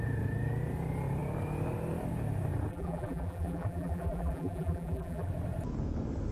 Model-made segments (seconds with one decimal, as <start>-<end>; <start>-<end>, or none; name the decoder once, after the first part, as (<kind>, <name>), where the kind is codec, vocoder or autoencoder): 2.7-5.3 (vocoder, BigVGAN v2)